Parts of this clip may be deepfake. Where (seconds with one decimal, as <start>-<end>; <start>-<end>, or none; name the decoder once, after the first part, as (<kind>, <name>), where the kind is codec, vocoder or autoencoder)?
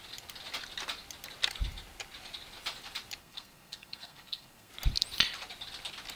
3.2-4.7 (codec, SNAC)